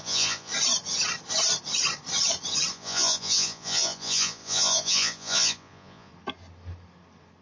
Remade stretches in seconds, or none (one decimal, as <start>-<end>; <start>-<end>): 0.0-0.5; 2.7-6.1